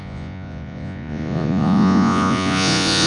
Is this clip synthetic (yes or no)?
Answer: yes